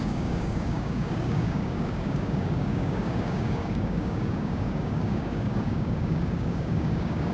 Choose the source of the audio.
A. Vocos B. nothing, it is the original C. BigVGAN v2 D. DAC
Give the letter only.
D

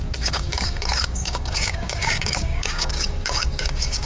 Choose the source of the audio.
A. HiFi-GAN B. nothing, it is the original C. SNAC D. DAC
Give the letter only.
D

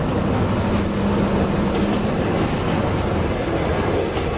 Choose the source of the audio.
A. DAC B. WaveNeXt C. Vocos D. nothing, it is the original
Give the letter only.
D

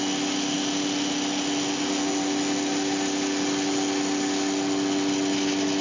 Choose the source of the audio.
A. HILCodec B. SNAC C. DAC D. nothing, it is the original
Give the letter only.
D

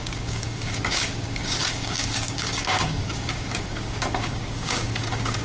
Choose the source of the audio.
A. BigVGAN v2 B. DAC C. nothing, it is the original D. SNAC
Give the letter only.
B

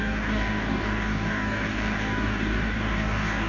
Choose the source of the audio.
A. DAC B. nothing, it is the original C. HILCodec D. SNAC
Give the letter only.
A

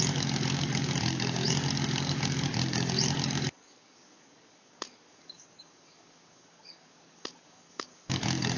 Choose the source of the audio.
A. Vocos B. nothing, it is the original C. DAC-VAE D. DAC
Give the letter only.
D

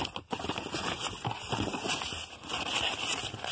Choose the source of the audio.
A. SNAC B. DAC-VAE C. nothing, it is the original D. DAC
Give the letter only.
C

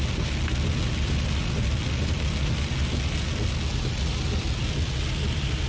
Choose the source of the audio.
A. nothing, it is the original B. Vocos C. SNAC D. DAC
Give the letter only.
A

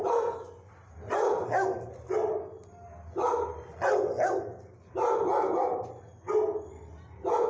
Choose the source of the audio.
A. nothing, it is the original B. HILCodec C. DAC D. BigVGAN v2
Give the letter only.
A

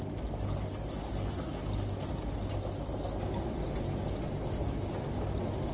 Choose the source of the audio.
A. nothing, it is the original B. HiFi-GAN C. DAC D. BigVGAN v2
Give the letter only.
A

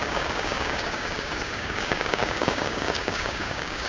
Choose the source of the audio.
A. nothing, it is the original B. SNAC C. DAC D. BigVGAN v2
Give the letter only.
C